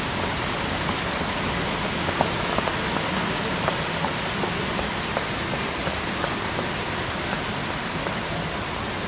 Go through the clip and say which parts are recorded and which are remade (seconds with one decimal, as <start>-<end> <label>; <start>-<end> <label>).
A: 0.0-9.1 recorded